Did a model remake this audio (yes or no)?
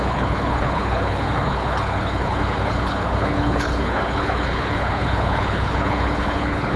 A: yes